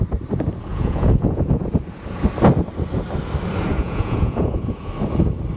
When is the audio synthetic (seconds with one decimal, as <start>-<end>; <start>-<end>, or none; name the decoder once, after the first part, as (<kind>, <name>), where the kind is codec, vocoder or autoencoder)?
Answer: 0.7-1.7 (vocoder, Vocos); 3.7-4.9